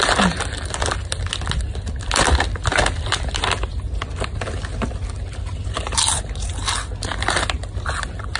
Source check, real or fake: real